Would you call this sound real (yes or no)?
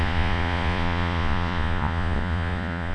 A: no